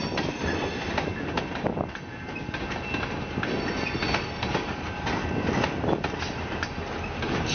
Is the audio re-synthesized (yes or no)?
no